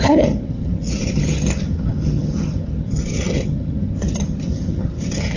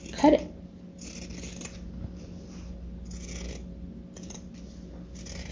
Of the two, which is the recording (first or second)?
second